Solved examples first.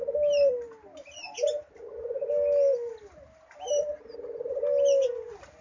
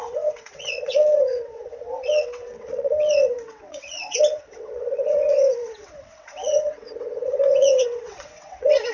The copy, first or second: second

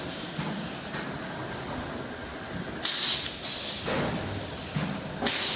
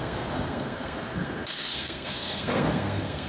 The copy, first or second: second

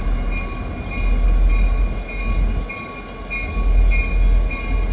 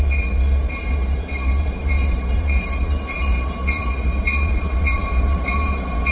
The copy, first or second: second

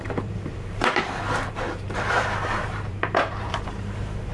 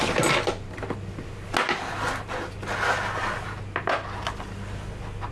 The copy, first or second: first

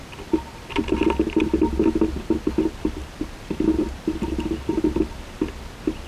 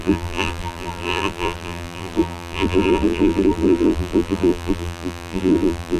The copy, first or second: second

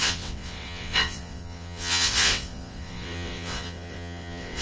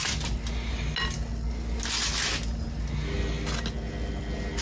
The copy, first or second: first